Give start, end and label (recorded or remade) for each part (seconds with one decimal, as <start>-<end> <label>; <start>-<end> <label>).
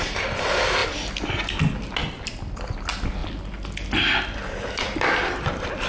0.0-2.0 recorded; 2.0-2.6 remade; 2.6-5.9 recorded